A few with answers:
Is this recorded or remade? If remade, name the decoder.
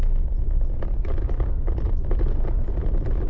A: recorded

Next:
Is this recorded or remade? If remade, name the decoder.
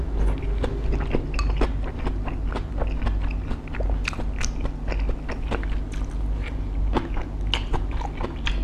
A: recorded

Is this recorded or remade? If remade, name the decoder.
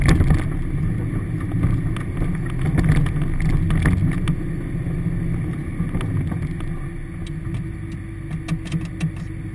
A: recorded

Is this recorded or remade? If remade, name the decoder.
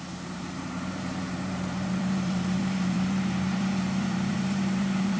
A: remade, vocoder, BigVGAN v2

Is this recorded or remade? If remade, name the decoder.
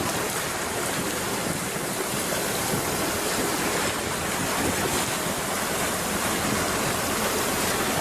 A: recorded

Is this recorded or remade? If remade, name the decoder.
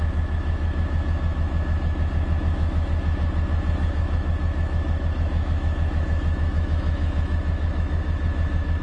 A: remade, autoencoder, DAC-VAE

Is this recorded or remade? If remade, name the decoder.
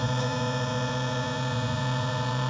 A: remade, vocoder, Vocos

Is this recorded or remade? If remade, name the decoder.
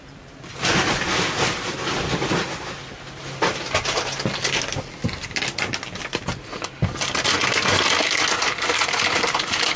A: recorded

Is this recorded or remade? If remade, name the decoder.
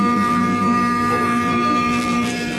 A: remade, vocoder, BigVGAN v2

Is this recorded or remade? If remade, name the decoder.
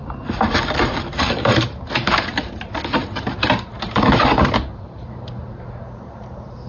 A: remade, vocoder, BigVGAN v2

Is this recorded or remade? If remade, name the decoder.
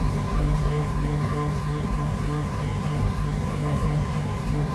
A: remade, codec, SNAC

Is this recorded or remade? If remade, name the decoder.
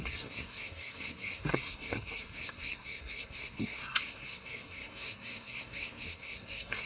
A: remade, codec, SNAC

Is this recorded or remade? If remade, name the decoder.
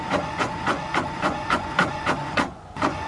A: remade, vocoder, Vocos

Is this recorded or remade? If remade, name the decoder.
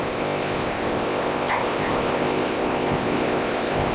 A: remade, codec, ZipCodec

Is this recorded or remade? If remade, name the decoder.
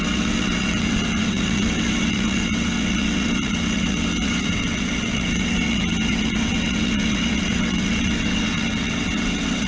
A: remade, vocoder, WaveNeXt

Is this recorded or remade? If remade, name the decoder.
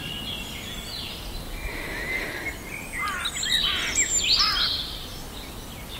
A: recorded